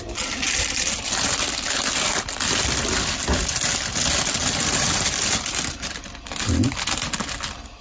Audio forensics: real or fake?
real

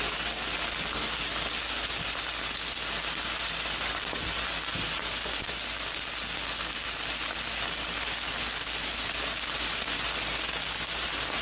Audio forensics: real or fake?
real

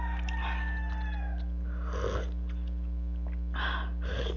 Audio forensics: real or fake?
real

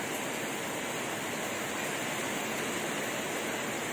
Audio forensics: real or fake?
fake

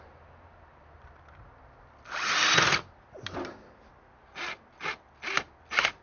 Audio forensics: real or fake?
real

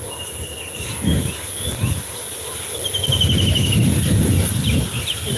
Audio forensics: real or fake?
real